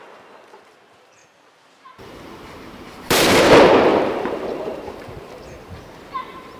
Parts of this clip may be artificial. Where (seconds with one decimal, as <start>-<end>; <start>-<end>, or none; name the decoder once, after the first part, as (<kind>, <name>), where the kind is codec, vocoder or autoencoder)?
1.2-3.5 (vocoder, BigVGAN v2); 3.9-5.3